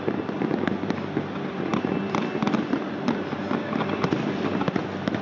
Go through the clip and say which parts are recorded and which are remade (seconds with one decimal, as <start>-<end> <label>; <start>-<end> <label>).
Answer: 0.0-5.2 recorded